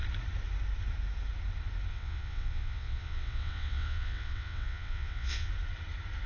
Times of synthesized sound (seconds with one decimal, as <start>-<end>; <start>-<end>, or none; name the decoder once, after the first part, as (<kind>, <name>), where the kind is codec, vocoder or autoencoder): 1.9-5.5 (vocoder, WaveNeXt)